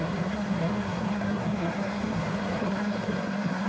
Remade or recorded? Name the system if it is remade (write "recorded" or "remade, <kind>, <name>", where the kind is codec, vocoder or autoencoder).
remade, codec, SNAC